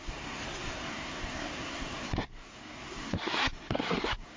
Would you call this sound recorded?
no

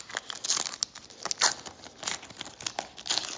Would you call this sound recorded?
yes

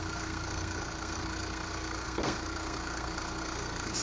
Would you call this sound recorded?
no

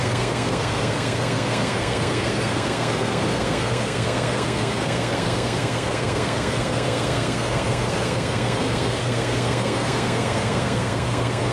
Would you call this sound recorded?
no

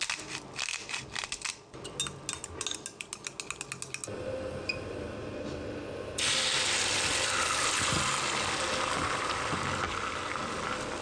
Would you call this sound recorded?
yes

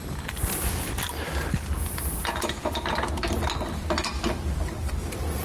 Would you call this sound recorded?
yes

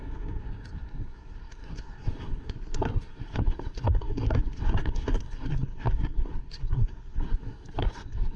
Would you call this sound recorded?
no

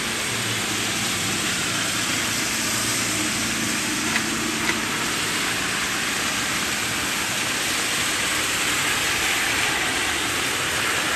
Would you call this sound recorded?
yes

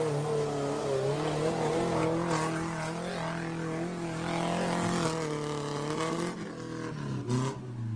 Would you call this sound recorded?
yes